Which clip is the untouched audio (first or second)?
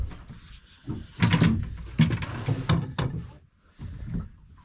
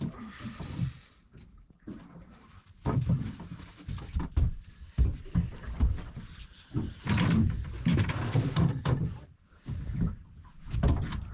first